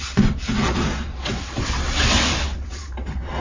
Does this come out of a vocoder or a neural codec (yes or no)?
yes